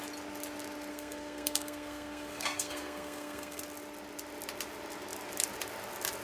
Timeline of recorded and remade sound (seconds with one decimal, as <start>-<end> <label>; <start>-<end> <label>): 0.0-0.9 recorded; 0.9-3.6 remade; 3.6-6.2 recorded